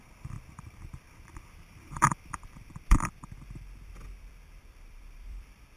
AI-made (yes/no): yes